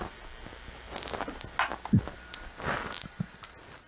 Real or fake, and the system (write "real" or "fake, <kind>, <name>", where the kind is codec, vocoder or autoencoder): real